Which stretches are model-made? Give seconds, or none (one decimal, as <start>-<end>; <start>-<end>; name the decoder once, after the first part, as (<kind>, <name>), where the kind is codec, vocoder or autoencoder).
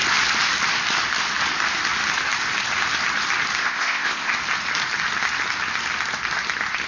3.6-4.4 (codec, ZipCodec)